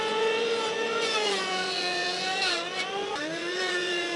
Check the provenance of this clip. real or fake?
fake